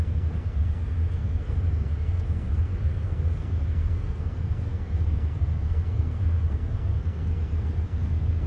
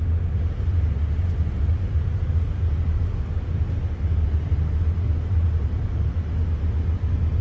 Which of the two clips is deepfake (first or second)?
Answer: first